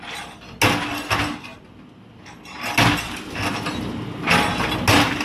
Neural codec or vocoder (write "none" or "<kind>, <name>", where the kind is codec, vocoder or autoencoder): none